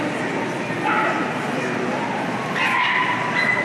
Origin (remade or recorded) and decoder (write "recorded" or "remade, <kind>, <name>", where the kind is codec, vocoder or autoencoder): recorded